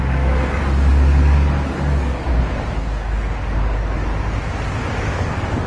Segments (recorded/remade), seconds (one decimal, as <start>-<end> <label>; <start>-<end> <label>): 0.0-4.1 remade; 4.1-5.0 recorded; 5.0-5.7 remade